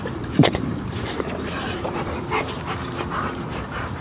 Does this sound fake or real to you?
fake